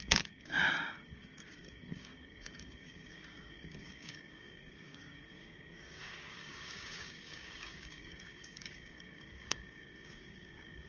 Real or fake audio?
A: fake